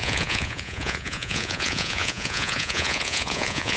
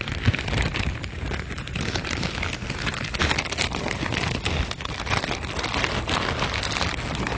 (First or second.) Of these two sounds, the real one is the second